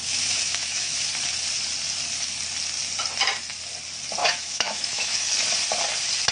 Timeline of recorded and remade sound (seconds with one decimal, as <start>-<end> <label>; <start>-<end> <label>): 0.0-1.1 remade; 1.1-4.2 recorded; 4.2-5.3 remade; 5.3-6.3 recorded

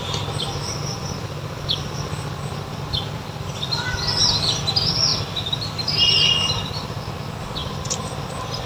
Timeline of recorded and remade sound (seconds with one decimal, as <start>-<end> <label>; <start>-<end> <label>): 0.0-8.7 recorded

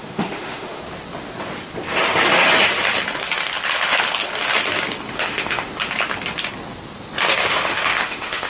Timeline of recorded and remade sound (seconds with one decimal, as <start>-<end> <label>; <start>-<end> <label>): 0.0-0.8 remade; 0.8-5.1 recorded; 5.1-5.7 remade; 5.7-7.5 recorded; 7.5-8.5 remade

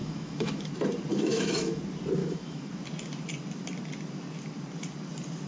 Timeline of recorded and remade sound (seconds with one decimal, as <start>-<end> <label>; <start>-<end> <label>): 0.0-0.7 remade; 0.7-1.1 recorded; 1.1-1.8 remade; 1.8-2.2 recorded; 2.2-2.7 remade; 2.7-5.5 recorded

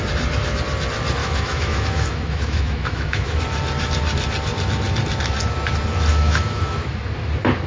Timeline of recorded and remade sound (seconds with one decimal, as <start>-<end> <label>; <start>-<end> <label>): 0.0-1.2 recorded; 1.2-3.4 remade; 3.4-6.1 recorded; 6.1-7.1 remade; 7.1-7.7 recorded